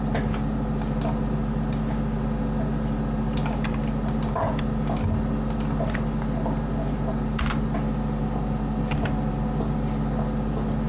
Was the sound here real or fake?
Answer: real